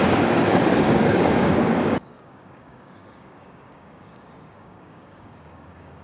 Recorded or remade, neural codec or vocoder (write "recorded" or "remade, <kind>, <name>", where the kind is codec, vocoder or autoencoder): remade, codec, DAC